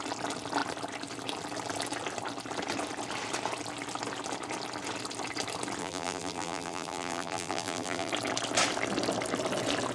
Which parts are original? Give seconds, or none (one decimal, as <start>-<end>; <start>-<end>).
0.0-5.8; 8.1-9.9